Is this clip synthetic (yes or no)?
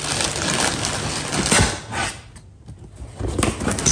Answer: no